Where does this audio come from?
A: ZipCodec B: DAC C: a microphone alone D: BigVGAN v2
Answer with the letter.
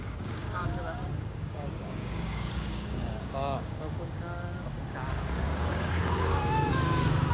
B